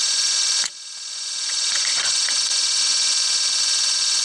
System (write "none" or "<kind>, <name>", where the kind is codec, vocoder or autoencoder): vocoder, Vocos